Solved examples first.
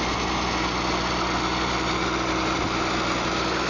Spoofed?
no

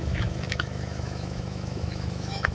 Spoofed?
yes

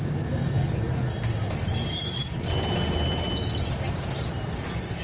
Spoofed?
no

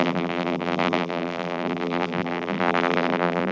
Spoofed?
yes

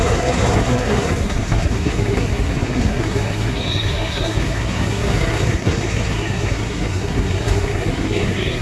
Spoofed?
yes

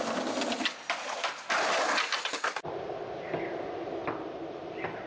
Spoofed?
no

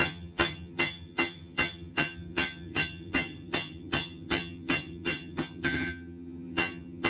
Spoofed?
yes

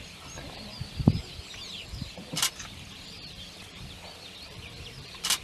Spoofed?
yes